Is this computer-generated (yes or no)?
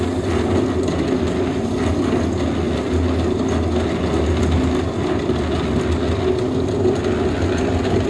no